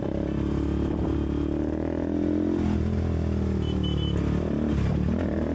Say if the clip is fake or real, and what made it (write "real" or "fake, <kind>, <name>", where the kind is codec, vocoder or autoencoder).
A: real